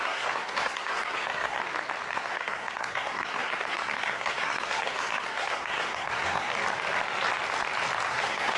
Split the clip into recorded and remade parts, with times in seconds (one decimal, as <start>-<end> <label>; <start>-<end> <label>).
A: 0.0-1.6 remade; 1.6-2.1 recorded; 2.1-6.5 remade; 6.5-8.1 recorded; 8.1-8.6 remade